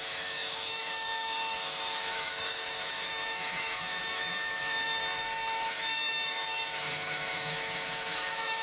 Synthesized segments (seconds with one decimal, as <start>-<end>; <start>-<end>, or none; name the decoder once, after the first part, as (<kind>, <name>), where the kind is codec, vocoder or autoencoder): 0.0-8.6 (autoencoder, DAC-VAE)